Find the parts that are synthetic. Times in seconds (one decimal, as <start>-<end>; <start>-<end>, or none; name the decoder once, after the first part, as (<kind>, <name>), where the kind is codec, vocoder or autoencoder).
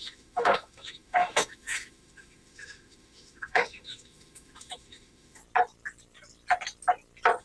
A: 0.0-5.4 (autoencoder, DAC-VAE)